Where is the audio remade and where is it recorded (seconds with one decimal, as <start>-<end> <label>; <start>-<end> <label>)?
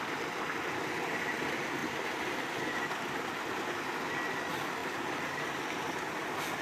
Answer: 0.0-4.8 recorded; 4.8-5.4 remade; 5.4-6.6 recorded